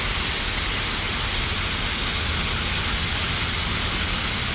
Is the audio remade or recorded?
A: recorded